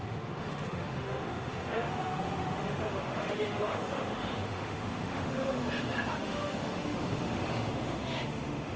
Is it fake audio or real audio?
fake